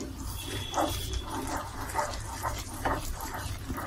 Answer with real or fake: real